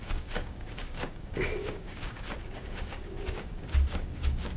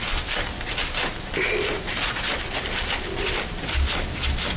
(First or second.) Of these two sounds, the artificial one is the first